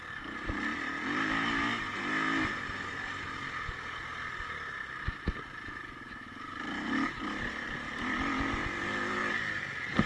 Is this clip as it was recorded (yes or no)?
yes